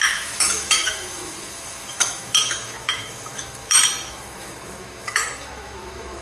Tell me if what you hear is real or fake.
fake